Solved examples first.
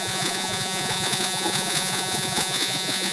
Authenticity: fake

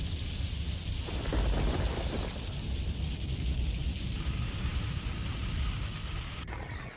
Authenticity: real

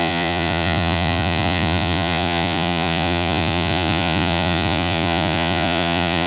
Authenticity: fake